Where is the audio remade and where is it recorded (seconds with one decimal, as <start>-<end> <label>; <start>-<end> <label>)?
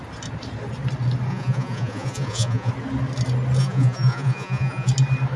0.0-1.3 recorded; 1.3-2.7 remade; 2.7-3.6 recorded; 3.6-4.9 remade; 4.9-5.4 recorded